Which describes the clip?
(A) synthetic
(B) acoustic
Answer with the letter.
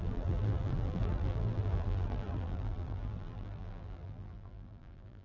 A